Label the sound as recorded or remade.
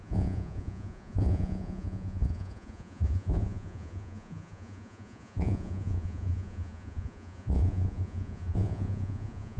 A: remade